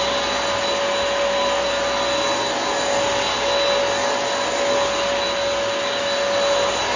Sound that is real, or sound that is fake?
real